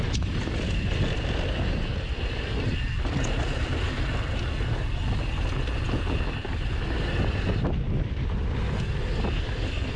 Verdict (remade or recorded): recorded